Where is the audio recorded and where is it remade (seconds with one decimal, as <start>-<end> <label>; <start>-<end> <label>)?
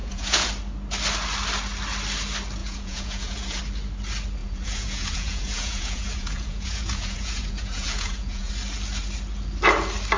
0.0-0.5 remade; 0.5-2.6 recorded; 2.6-3.6 remade; 3.6-4.4 recorded; 4.4-8.5 remade; 8.5-10.2 recorded